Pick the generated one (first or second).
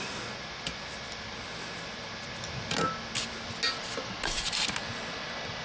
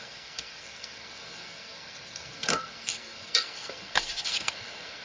second